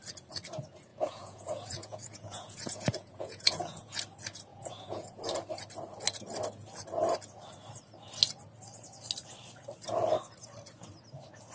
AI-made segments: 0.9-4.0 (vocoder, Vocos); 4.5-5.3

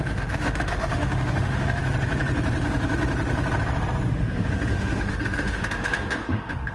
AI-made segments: 0.0-1.8 (autoencoder, DAC-VAE); 4.1-6.7

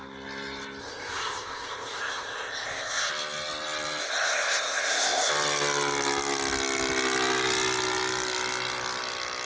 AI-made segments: 0.8-3.1 (codec, ZipCodec); 4.0-5.3

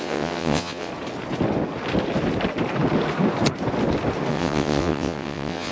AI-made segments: 0.0-0.9 (vocoder, WaveNeXt); 4.3-5.7

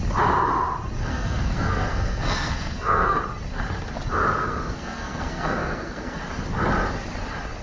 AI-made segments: 1.1-3.2 (codec, SNAC); 4.4-6.2

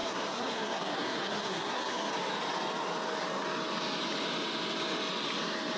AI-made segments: 0.0-2.1 (codec, SNAC)

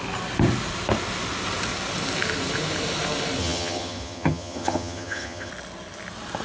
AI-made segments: 3.4-5.5 (vocoder, HiFi-GAN)

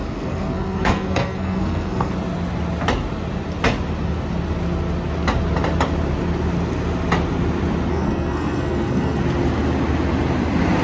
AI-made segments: 0.0-2.1 (codec, SNAC); 7.9-9.2